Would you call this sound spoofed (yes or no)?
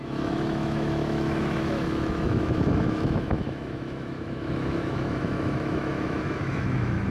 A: yes